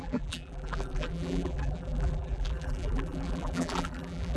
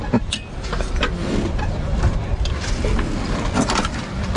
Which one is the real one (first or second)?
second